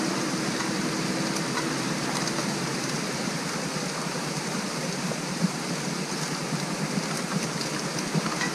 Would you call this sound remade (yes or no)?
no